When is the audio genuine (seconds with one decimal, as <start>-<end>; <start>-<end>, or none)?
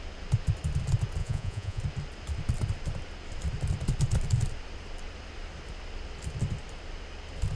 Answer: 0.0-1.2; 1.8-7.6